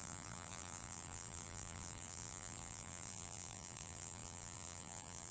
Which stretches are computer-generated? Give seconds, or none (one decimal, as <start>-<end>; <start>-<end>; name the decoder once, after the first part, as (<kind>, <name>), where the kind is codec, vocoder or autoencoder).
0.0-5.3 (vocoder, BigVGAN v2)